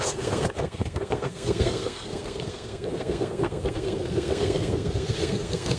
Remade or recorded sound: remade